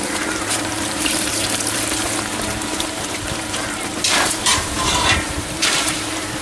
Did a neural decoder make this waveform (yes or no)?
yes